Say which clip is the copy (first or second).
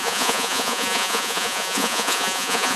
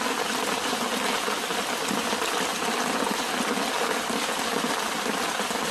first